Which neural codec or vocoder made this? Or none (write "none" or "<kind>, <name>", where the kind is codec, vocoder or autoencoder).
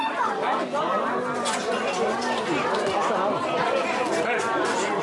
none